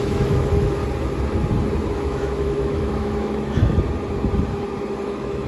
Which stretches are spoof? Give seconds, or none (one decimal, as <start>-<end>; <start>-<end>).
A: 0.0-0.8; 1.9-3.6; 5.0-5.5